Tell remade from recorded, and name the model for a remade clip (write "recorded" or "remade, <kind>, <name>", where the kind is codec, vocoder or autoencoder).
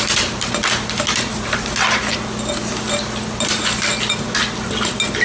recorded